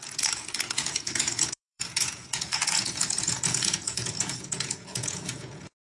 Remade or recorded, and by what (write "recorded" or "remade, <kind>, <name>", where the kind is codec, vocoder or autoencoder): remade, vocoder, Vocos